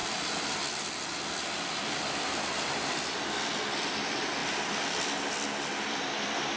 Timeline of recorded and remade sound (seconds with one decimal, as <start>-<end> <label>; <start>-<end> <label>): 0.0-6.6 remade